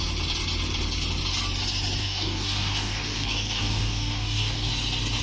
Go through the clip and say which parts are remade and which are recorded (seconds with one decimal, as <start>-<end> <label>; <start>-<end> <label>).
0.0-2.0 recorded; 2.0-4.7 remade; 4.7-5.2 recorded